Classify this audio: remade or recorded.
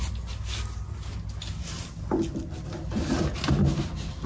recorded